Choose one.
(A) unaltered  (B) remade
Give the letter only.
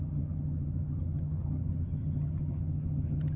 B